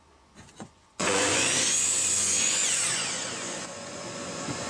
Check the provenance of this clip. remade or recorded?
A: remade